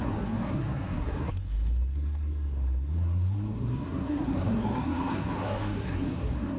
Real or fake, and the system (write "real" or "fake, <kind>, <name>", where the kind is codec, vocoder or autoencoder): fake, codec, SNAC